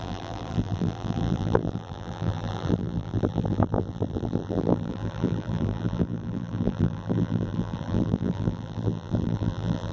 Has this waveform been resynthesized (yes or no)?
yes